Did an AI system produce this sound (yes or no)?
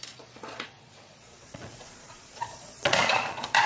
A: yes